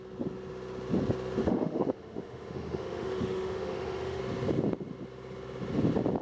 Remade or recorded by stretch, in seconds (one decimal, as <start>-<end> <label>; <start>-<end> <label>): 0.0-1.4 recorded; 1.4-4.2 remade; 4.2-6.2 recorded